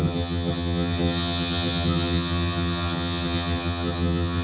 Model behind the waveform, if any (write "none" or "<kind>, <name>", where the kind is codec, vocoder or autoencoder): vocoder, HiFi-GAN